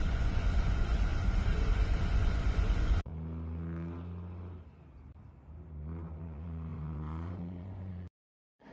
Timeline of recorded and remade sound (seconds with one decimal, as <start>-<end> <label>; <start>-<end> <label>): 0.0-3.1 remade; 3.1-6.2 recorded; 6.2-8.7 remade